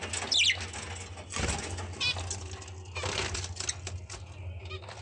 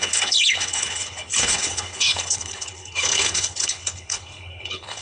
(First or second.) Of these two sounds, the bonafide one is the first